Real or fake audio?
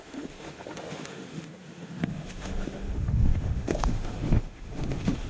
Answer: fake